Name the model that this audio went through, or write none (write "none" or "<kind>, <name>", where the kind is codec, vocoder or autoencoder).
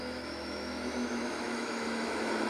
autoencoder, DAC-VAE